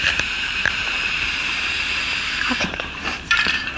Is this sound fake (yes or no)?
yes